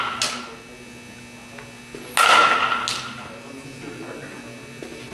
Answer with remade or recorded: recorded